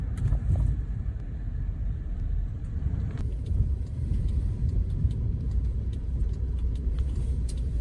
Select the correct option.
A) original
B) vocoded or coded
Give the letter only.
B